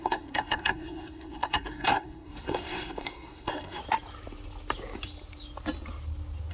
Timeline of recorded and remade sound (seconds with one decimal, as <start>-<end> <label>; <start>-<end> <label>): 0.0-3.8 remade; 3.8-6.5 recorded